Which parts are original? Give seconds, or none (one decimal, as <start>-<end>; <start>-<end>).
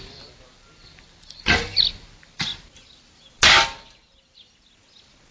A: 0.0-5.3